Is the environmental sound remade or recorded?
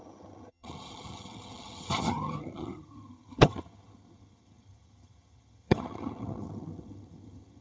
remade